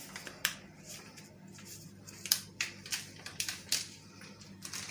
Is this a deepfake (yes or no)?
no